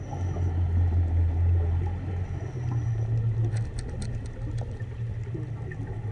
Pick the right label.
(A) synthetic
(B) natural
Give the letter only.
B